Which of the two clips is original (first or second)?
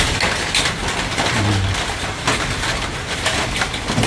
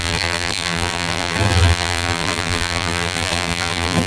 first